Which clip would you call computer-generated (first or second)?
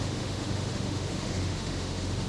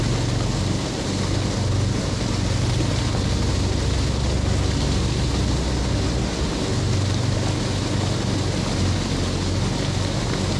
first